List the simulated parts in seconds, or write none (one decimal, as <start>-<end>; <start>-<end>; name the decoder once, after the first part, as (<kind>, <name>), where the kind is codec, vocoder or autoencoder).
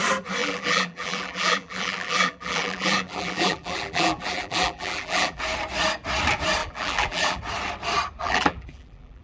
0.4-5.4 (vocoder, BigVGAN v2); 6.6-7.4; 8.2-9.2